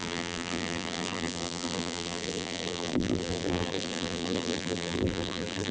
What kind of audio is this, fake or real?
fake